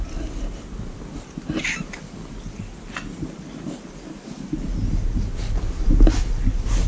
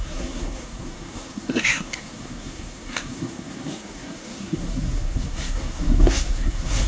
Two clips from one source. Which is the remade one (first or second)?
second